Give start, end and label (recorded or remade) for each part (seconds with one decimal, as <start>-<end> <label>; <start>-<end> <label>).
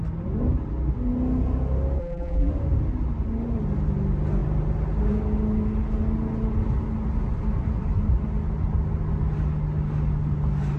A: 0.0-2.0 recorded; 2.0-2.5 remade; 2.5-10.8 recorded